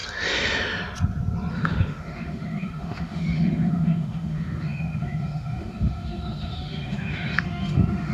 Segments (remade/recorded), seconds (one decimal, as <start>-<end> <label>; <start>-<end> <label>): 0.0-1.5 recorded; 1.5-8.1 remade